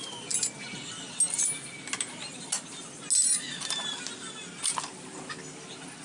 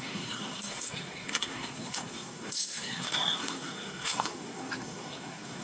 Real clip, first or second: first